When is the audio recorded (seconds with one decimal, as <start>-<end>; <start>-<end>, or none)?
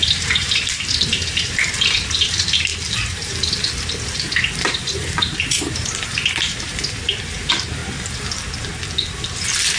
7.8-9.8